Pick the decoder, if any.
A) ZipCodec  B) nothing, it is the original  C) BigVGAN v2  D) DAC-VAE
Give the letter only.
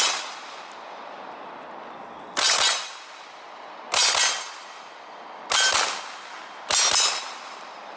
B